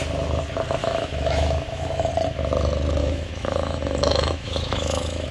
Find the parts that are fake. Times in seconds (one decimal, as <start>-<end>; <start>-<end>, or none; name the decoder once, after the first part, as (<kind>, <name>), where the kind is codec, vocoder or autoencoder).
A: 0.8-2.1 (autoencoder, DAC-VAE); 3.0-5.3